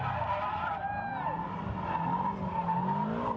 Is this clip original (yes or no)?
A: yes